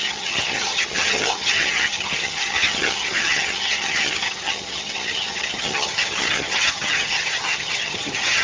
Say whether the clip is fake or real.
fake